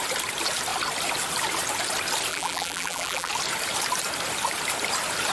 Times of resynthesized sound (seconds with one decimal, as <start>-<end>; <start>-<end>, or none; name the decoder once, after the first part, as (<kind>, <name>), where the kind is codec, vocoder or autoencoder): 2.3-3.3 (vocoder, BigVGAN v2)